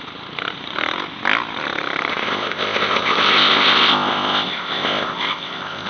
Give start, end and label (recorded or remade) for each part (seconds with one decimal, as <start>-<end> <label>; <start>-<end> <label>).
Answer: 0.0-2.1 recorded; 2.1-5.9 remade